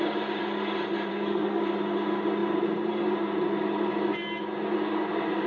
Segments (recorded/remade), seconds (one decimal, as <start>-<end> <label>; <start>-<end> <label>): 0.0-1.1 recorded; 1.1-1.6 remade; 1.6-5.5 recorded